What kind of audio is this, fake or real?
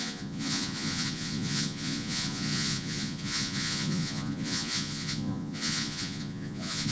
fake